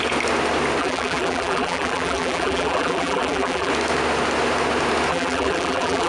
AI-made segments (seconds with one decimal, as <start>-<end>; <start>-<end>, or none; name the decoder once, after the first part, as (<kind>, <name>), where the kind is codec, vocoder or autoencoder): 0.8-3.7 (vocoder, BigVGAN v2); 5.1-6.1